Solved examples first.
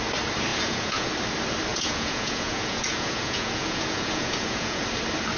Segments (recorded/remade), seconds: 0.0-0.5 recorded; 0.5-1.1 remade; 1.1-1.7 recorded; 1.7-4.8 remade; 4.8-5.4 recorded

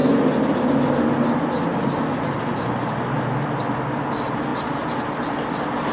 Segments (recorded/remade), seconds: 0.0-3.5 recorded; 3.5-5.9 remade

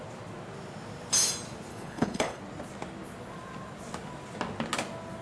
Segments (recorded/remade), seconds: 0.0-1.7 recorded; 1.7-2.4 remade; 2.4-5.2 recorded

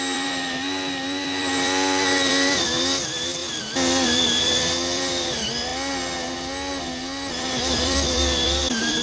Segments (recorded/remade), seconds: 0.0-5.7 remade; 5.7-7.3 recorded; 7.3-9.0 remade